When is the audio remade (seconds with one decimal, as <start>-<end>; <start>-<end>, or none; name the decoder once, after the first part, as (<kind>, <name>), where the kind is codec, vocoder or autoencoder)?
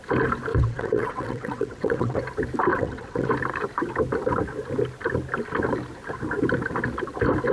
0.5-2.2 (vocoder, WaveNeXt); 2.7-3.3